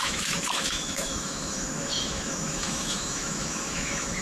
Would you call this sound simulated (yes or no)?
yes